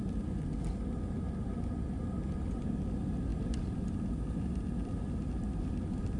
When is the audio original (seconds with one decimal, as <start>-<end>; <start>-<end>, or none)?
0.0-6.2

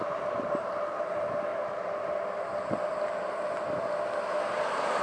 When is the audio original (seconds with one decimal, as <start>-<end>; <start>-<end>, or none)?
1.5-4.5